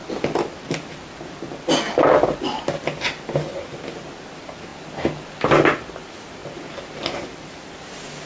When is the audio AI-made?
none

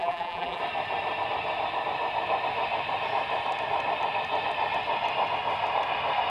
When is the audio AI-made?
0.0-0.6 (vocoder, BigVGAN v2)

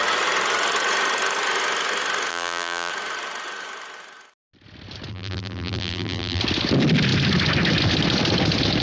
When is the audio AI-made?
2.3-2.9 (vocoder, BigVGAN v2); 5.1-6.4

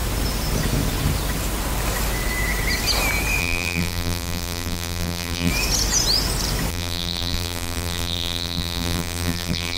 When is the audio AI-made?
3.4-5.5 (vocoder, BigVGAN v2); 6.7-9.8

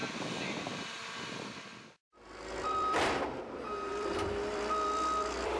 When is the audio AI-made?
0.0-3.4 (vocoder, BigVGAN v2); 3.9-5.6